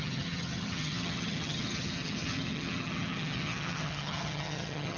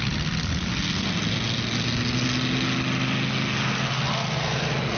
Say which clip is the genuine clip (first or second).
second